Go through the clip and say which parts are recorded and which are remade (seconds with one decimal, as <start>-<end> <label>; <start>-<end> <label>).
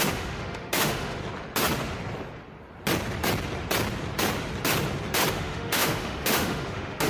0.0-1.2 remade; 1.2-5.3 recorded; 5.3-7.1 remade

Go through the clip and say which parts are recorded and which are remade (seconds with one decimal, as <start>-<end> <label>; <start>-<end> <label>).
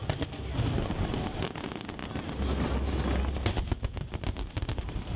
0.0-5.2 recorded